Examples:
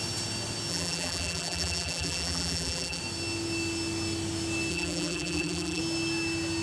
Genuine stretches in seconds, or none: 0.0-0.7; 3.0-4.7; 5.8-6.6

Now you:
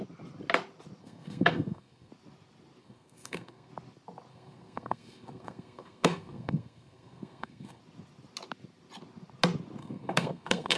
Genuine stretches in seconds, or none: 0.0-1.0; 2.1-2.8; 3.7-4.3; 7.8-9.8